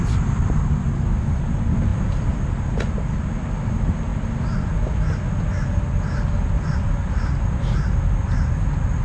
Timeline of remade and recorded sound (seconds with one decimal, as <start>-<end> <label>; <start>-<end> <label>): 0.0-9.0 recorded